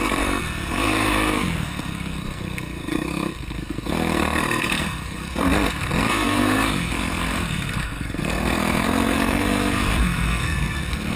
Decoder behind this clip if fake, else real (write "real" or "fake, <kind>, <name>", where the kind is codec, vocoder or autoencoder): fake, codec, SNAC